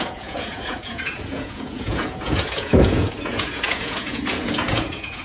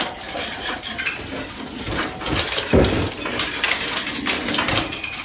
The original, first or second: second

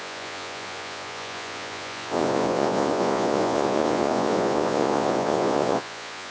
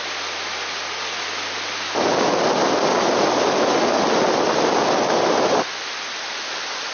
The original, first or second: second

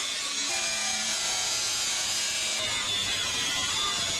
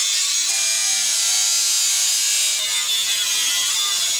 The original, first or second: second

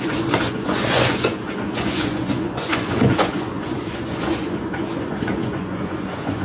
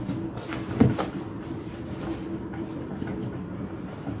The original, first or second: second